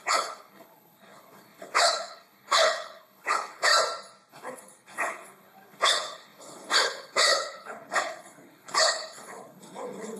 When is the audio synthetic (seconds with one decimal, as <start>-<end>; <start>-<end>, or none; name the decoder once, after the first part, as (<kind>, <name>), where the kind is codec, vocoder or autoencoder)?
0.0-3.7 (codec, HILCodec); 4.3-10.2